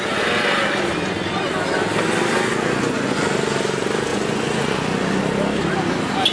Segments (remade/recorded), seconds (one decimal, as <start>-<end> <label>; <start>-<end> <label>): 0.0-2.5 recorded; 2.5-3.2 remade; 3.2-4.1 recorded; 4.1-5.2 remade; 5.2-6.3 recorded